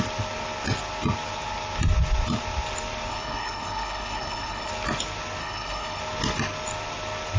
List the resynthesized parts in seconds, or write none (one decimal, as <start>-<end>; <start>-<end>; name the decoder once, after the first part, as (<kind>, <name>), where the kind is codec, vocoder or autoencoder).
3.1-4.7 (codec, HILCodec); 5.4-6.0